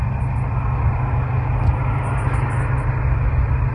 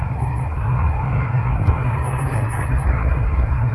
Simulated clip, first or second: second